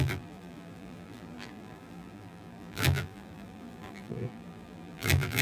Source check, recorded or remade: remade